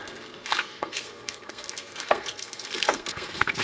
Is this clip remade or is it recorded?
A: remade